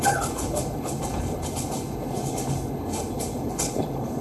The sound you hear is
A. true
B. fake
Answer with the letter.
B